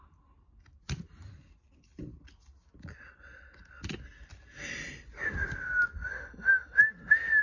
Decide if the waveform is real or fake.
real